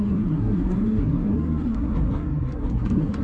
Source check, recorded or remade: remade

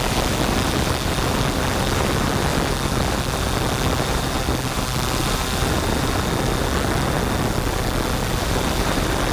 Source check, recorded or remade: recorded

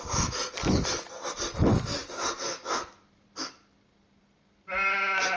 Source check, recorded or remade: recorded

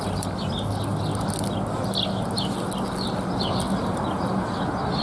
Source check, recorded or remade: recorded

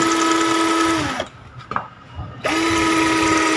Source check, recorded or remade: recorded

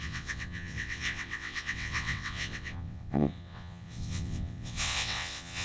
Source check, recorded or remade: remade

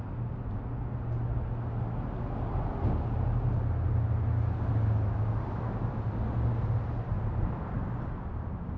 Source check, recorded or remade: recorded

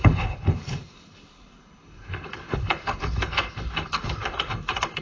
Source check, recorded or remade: remade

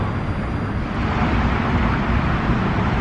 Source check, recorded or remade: recorded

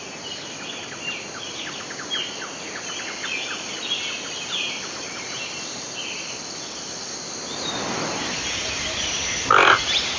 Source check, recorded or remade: recorded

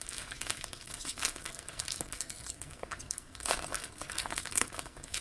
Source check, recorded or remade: remade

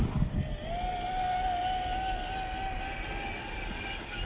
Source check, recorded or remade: recorded